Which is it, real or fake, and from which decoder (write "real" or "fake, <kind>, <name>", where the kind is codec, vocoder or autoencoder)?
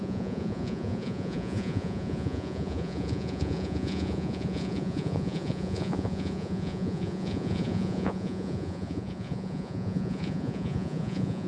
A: fake, vocoder, Vocos